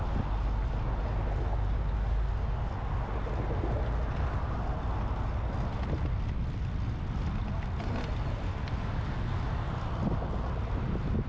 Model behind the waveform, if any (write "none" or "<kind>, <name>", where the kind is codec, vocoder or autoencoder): none